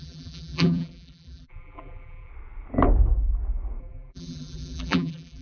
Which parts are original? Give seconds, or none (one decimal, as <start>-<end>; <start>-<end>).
2.3-3.8